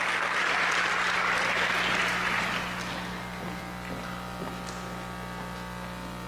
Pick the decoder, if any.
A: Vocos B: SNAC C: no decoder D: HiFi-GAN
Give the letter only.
C